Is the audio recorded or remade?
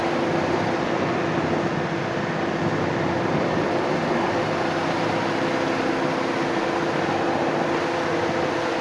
recorded